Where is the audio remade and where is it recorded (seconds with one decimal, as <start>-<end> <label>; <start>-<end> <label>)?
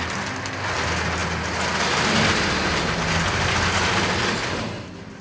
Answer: 0.0-5.2 recorded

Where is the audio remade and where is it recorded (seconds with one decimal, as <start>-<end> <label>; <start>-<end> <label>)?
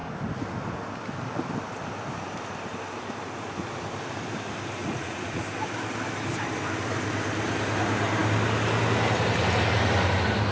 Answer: 0.0-4.8 recorded; 4.8-5.4 remade; 5.4-10.5 recorded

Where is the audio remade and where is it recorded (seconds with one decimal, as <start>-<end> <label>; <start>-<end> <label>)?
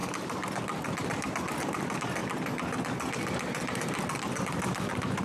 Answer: 0.0-5.2 recorded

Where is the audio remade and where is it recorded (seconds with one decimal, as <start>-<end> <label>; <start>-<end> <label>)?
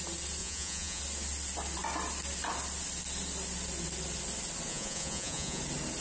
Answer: 0.0-0.4 recorded; 0.4-1.0 remade; 1.0-4.7 recorded; 4.7-5.6 remade; 5.6-6.0 recorded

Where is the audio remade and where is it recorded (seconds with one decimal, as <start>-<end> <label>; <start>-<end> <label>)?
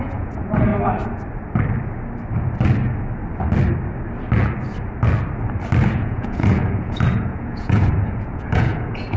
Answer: 0.0-0.7 remade; 0.7-5.9 recorded; 5.9-9.2 remade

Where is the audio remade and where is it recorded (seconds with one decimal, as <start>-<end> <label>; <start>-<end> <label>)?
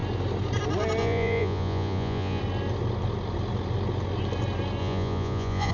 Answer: 0.0-1.0 recorded; 1.0-2.4 remade; 2.4-4.8 recorded; 4.8-5.7 remade